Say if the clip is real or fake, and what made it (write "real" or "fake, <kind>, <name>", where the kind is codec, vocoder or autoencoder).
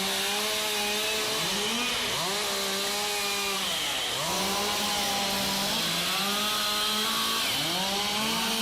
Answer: real